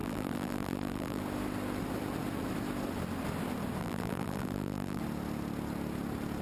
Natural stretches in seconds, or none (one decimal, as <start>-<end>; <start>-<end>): 1.2-3.8; 5.0-6.4